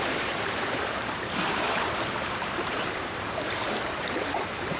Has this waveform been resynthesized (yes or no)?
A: yes